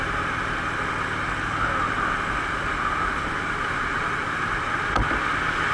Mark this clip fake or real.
real